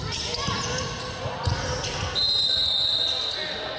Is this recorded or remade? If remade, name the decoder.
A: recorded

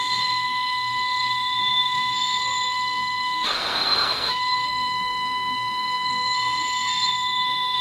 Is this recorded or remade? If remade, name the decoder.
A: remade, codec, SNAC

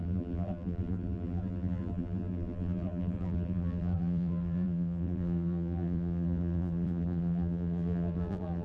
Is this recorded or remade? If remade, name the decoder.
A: remade, vocoder, BigVGAN v2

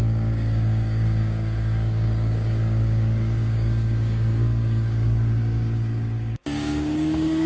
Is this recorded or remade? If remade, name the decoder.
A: remade, codec, DAC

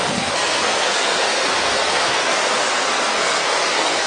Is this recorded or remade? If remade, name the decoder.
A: remade, codec, SNAC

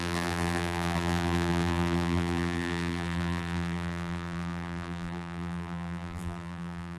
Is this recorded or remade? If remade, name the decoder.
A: remade, vocoder, BigVGAN v2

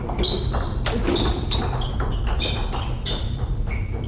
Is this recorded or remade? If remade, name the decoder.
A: recorded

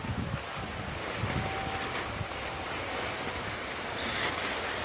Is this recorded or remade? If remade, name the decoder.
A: recorded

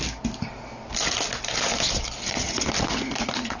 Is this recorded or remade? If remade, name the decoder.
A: recorded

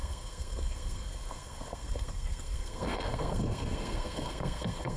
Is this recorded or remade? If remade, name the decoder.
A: remade, codec, SNAC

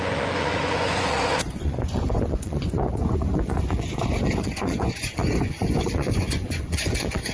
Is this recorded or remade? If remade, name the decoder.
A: remade, vocoder, Vocos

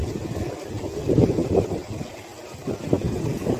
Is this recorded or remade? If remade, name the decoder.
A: recorded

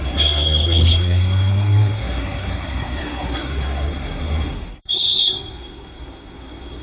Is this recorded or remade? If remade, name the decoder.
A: remade, codec, SNAC